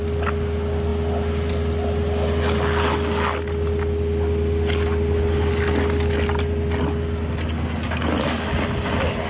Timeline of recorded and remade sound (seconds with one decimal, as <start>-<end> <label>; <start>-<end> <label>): 0.0-9.3 recorded